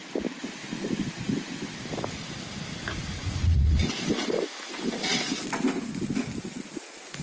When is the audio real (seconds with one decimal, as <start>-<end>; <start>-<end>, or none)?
0.0-2.8; 3.9-7.2